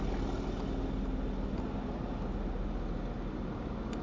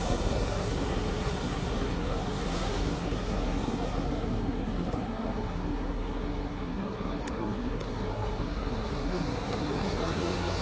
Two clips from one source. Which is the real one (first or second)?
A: first